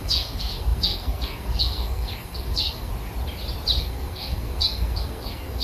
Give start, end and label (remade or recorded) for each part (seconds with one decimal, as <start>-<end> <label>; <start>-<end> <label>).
0.0-2.9 remade; 2.9-3.8 recorded; 3.8-5.6 remade